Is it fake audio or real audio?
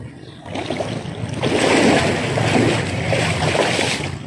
real